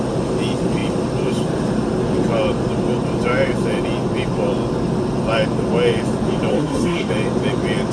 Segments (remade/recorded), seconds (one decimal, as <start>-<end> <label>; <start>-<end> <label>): 0.0-6.5 recorded; 6.5-7.1 remade; 7.1-7.9 recorded